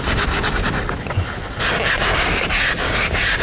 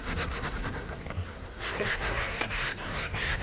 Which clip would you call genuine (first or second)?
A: first